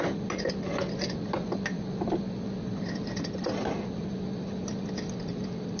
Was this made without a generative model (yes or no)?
yes